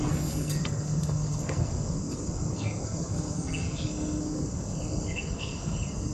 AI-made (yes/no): yes